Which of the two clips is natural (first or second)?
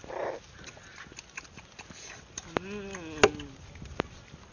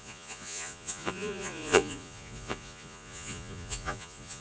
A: first